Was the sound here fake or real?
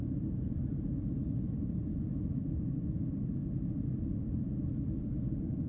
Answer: fake